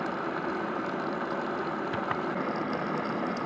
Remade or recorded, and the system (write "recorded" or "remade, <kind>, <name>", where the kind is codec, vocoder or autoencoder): recorded